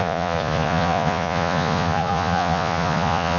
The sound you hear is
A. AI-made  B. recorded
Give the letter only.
A